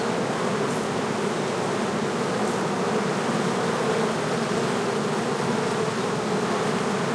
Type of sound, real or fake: real